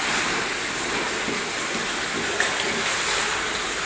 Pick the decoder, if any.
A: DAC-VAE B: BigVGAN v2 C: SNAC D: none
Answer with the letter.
D